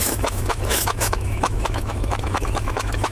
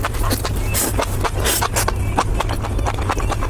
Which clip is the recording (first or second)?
second